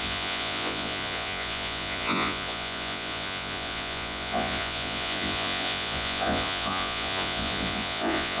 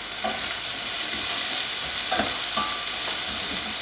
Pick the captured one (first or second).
second